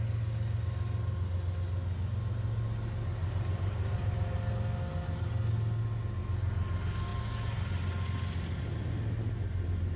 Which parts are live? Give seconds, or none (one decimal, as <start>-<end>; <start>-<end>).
0.0-3.2; 4.5-10.0